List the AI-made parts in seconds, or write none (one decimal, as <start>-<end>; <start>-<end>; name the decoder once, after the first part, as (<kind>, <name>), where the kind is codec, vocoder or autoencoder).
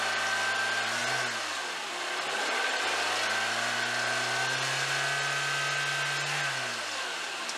none